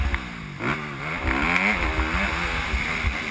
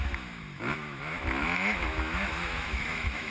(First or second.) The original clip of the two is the first